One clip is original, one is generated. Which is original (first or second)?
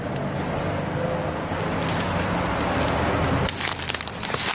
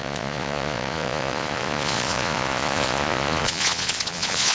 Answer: first